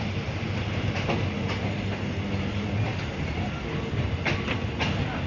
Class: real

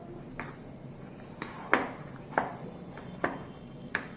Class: real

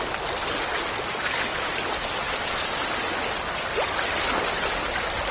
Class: real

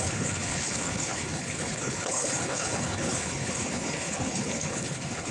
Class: fake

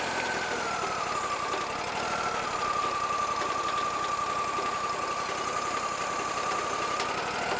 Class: real